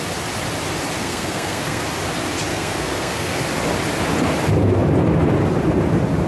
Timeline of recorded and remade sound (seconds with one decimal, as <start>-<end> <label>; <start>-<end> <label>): 0.0-1.0 recorded; 1.0-1.8 remade; 1.8-2.5 recorded; 2.5-3.4 remade; 3.4-6.3 recorded